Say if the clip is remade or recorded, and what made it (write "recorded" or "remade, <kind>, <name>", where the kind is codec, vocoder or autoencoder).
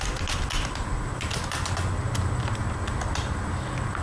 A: recorded